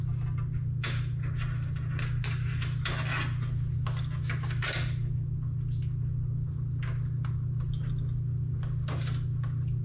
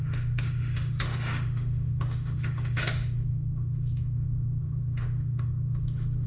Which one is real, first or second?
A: first